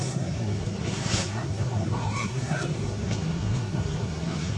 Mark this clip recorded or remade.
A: remade